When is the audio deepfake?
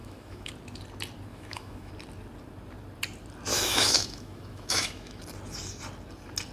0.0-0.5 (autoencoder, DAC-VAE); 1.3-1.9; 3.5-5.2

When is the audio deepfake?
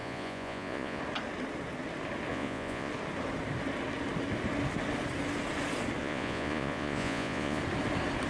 0.0-1.0 (vocoder, Vocos); 2.3-2.9; 6.0-7.6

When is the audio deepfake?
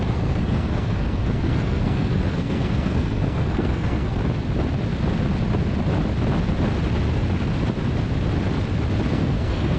0.0-4.2 (codec, SNAC); 9.1-9.8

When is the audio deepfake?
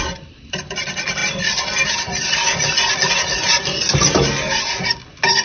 none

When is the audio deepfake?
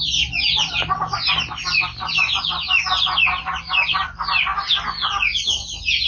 none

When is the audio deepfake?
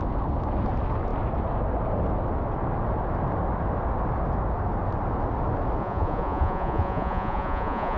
5.8-8.0 (vocoder, Vocos)